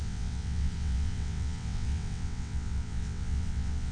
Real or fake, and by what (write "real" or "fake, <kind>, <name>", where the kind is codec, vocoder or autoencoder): fake, vocoder, WaveNeXt